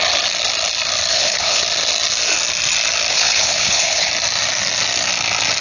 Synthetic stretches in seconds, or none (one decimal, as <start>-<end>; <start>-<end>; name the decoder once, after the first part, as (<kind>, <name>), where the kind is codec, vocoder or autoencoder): 1.1-1.6 (codec, HILCodec); 3.1-4.1